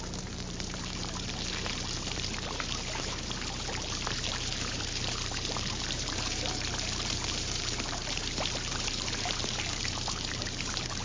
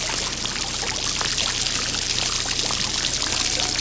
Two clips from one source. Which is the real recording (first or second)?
second